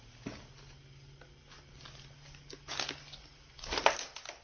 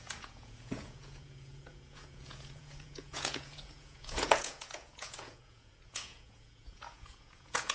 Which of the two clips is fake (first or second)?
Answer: second